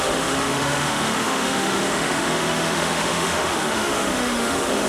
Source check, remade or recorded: remade